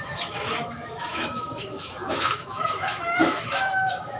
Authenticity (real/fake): fake